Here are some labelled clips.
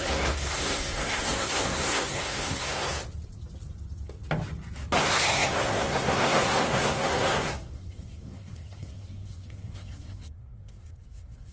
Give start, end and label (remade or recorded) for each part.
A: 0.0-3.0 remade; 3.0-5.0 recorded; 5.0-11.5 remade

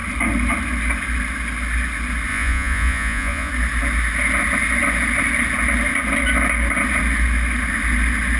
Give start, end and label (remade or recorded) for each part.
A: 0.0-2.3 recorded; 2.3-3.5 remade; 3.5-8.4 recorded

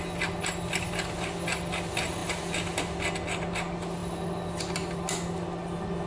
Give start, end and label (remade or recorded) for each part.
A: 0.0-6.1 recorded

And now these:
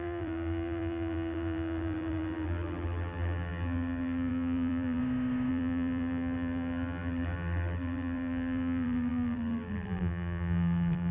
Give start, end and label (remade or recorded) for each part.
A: 0.0-5.0 remade; 5.0-5.5 recorded; 5.5-11.1 remade

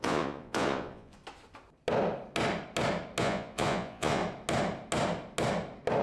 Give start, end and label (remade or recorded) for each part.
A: 0.0-1.2 remade; 1.2-3.2 recorded; 3.2-4.2 remade; 4.2-6.0 recorded

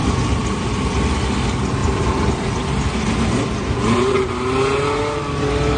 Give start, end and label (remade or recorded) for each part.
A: 0.0-1.2 remade; 1.2-1.8 recorded; 1.8-4.3 remade; 4.3-5.8 recorded

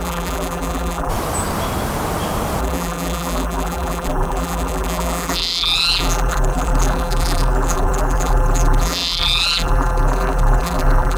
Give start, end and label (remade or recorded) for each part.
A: 0.0-1.1 remade; 1.1-2.6 recorded; 2.6-11.2 remade

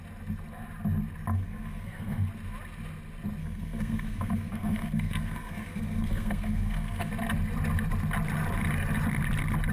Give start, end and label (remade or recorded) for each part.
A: 0.0-1.3 recorded; 1.3-2.3 remade; 2.3-3.4 recorded; 3.4-7.1 remade; 7.1-9.7 recorded